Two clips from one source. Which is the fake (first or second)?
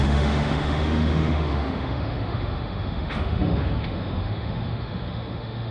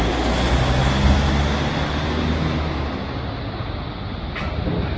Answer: first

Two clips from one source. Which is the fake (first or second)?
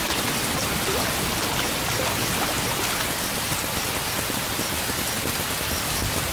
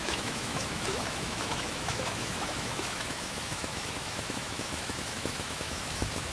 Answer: second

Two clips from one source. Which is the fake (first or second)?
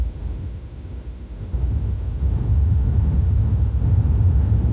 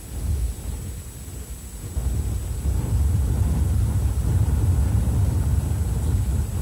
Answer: first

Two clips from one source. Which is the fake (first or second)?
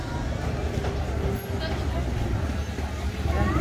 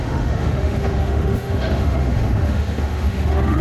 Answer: second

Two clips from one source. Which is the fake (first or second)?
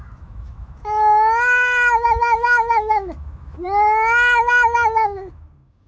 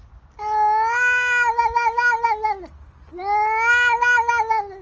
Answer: first